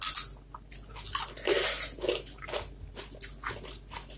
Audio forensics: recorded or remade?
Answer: recorded